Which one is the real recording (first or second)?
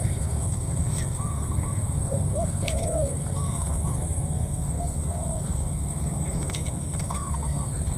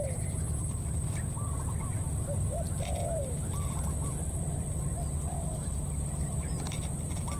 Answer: second